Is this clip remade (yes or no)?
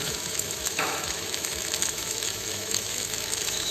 yes